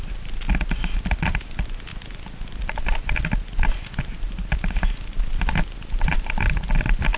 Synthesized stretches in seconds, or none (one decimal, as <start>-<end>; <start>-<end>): none

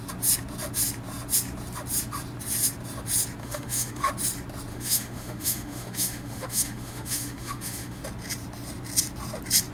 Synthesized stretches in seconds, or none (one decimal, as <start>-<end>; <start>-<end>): 3.4-4.1; 4.7-8.0

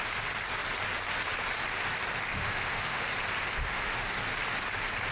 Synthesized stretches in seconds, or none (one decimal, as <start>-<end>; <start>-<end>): 2.3-3.0; 3.6-4.2

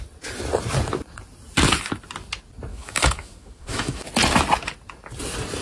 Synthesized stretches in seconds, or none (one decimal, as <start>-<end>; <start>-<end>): 2.7-4.1

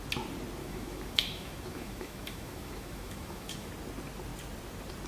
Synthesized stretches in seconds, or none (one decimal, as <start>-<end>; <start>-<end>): 0.6-3.7

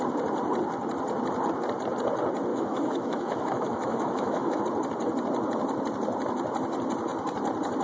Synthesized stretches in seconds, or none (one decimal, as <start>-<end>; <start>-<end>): 2.5-4.6